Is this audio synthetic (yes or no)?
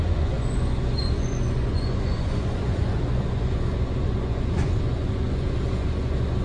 yes